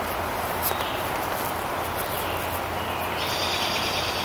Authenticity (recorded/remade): recorded